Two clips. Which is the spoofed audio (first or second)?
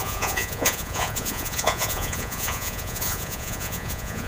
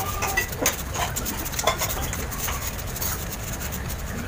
first